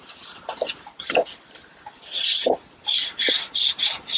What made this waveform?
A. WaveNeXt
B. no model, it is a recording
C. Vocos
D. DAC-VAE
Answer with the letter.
B